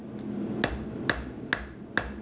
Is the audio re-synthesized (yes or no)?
no